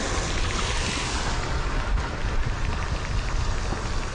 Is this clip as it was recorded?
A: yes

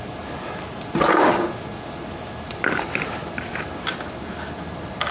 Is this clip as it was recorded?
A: yes